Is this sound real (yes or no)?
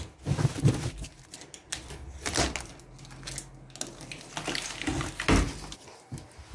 yes